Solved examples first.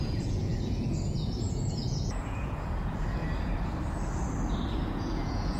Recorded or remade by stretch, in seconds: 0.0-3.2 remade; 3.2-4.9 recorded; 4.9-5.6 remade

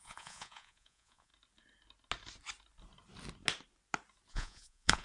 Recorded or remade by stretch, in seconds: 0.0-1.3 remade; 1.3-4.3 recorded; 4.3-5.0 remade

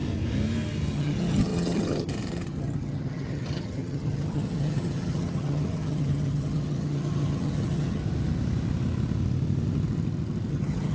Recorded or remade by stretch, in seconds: 0.0-0.9 recorded; 0.9-8.0 remade; 8.0-10.5 recorded; 10.5-10.9 remade

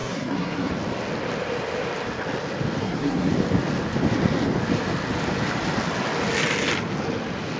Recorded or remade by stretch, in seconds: 0.0-0.7 remade; 0.7-2.8 recorded; 2.8-3.3 remade; 3.3-7.6 recorded

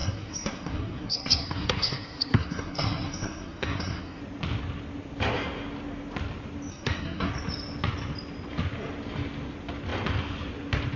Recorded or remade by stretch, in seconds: 0.0-4.2 remade; 4.2-6.7 recorded; 6.7-7.3 remade; 7.3-11.0 recorded

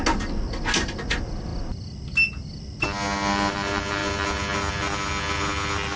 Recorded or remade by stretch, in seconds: 0.0-6.0 recorded